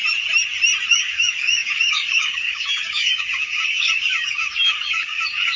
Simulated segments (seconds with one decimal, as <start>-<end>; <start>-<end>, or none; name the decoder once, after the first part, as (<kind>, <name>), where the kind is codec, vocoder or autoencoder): 0.9-5.6 (codec, DAC)